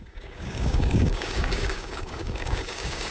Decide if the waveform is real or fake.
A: fake